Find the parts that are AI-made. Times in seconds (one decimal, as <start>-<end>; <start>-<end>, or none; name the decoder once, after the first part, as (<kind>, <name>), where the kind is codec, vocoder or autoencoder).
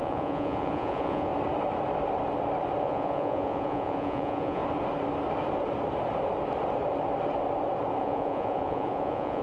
0.0-1.3 (vocoder, Vocos); 2.8-4.6; 8.0-9.4